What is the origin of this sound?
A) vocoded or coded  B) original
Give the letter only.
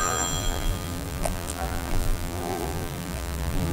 A